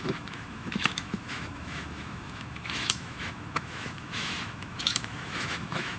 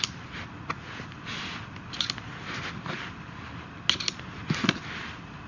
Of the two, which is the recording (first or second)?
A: second